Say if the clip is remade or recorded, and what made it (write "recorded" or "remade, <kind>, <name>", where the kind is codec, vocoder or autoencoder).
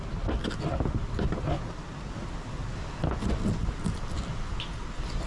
recorded